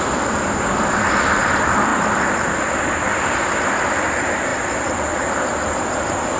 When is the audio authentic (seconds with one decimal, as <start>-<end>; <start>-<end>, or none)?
0.0-6.4